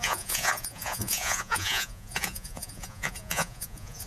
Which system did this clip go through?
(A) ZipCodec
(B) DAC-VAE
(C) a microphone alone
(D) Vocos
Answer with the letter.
D